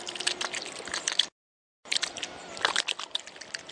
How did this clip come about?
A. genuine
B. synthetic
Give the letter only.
A